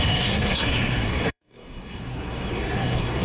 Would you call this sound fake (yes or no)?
yes